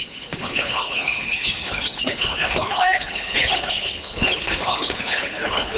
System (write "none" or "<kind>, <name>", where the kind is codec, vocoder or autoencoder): codec, HILCodec